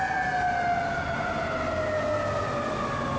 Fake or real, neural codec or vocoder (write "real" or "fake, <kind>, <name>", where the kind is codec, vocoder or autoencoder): real